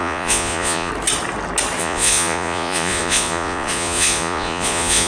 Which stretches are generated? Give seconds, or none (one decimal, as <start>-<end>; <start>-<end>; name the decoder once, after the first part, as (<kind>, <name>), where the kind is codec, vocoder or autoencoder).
0.0-0.9 (vocoder, Vocos); 1.8-5.1